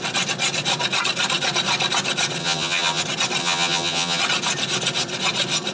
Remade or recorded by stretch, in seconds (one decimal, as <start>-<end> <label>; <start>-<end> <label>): 0.0-2.4 recorded; 2.4-3.0 remade; 3.0-3.4 recorded; 3.4-4.2 remade; 4.2-5.7 recorded